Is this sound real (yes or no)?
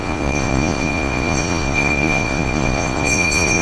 no